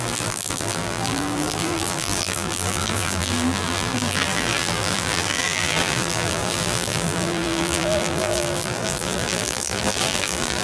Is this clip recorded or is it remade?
remade